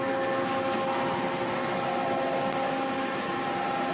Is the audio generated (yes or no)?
no